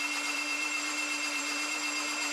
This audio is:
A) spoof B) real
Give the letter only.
A